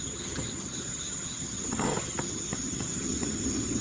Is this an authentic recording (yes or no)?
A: no